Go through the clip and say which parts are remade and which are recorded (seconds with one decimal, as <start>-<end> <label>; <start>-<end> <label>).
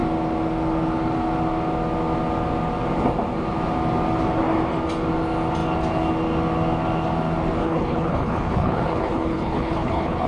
0.0-7.6 recorded; 7.6-10.3 remade